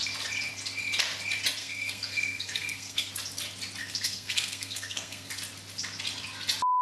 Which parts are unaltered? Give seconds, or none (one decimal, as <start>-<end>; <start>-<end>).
0.0-1.6; 3.1-3.8; 5.3-6.8